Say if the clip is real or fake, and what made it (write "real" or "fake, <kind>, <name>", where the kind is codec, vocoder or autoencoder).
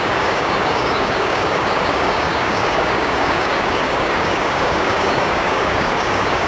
fake, codec, DAC